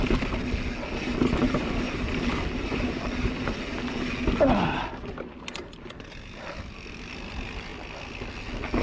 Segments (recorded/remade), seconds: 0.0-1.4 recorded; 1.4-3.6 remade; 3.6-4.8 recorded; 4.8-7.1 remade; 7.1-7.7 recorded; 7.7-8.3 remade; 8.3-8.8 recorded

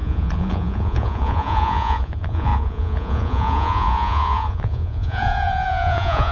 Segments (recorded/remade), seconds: 0.0-6.3 remade

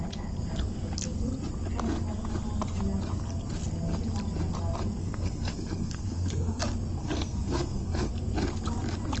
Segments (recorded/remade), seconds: 0.0-5.0 recorded; 5.0-6.6 remade; 6.6-7.0 recorded; 7.0-8.1 remade; 8.1-9.2 recorded

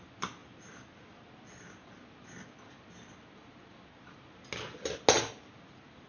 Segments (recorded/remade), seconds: 0.0-6.1 recorded

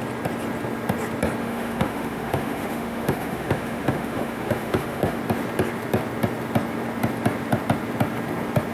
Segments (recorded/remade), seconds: 0.0-1.4 recorded; 1.4-5.2 remade; 5.2-8.7 recorded

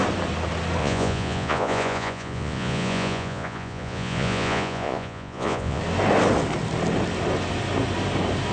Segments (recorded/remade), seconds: 0.0-0.8 recorded; 0.8-5.8 remade; 5.8-8.5 recorded